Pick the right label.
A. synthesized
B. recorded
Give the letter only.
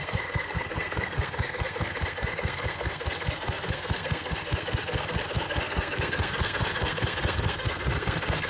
A